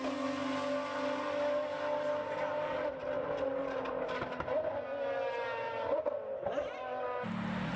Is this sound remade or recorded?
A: recorded